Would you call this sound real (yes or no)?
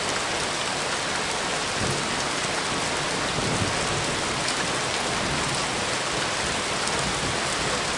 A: yes